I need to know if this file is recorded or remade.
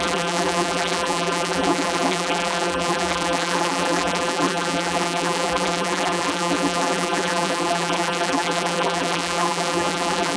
remade